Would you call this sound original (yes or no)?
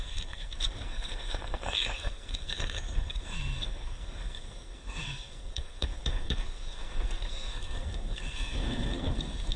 no